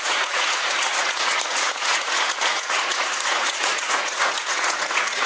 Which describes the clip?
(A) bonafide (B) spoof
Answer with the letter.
B